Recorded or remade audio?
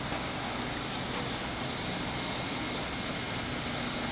recorded